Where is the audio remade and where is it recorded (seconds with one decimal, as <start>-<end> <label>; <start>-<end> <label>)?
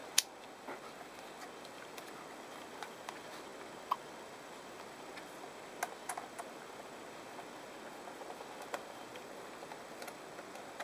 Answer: 0.0-10.8 recorded